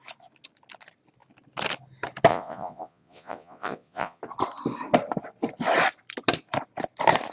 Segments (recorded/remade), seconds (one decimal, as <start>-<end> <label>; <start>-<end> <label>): 0.0-2.3 recorded; 2.3-4.2 remade; 4.2-7.3 recorded